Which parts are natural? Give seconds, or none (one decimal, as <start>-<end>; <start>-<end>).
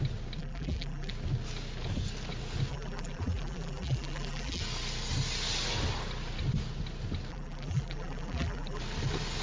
0.0-0.4; 1.1-2.7; 4.6-7.3; 8.8-9.4